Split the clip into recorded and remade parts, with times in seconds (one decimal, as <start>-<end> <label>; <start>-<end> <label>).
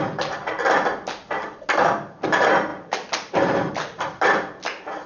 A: 0.0-5.1 recorded